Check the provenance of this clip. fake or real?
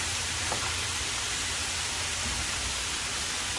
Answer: real